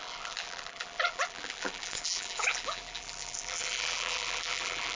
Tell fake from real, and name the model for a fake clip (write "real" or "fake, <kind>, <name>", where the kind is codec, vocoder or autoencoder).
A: fake, vocoder, BigVGAN v2